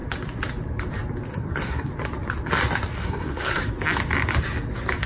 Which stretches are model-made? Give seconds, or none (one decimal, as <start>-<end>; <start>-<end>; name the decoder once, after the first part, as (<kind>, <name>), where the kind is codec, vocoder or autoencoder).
1.3-1.9 (codec, SNAC); 3.0-3.6